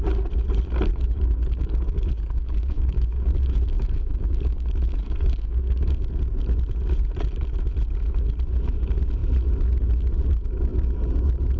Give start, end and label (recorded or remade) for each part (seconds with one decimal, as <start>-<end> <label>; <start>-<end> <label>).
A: 0.0-0.9 recorded; 0.9-6.1 remade; 6.1-11.6 recorded

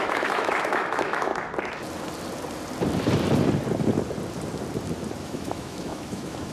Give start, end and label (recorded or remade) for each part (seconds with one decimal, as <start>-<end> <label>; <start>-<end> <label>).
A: 0.0-1.3 remade; 1.3-5.2 recorded; 5.2-6.5 remade

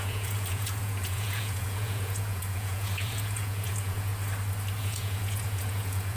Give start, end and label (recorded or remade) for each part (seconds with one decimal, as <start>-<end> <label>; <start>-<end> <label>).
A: 0.0-4.1 remade; 4.1-4.8 recorded; 4.8-6.2 remade

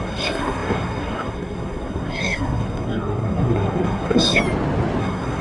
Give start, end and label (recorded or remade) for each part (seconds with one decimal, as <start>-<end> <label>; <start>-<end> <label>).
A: 0.0-4.4 remade; 4.4-5.0 recorded; 5.0-5.4 remade